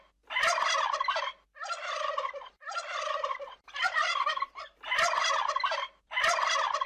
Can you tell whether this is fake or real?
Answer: real